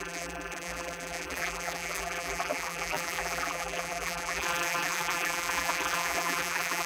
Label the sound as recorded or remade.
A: remade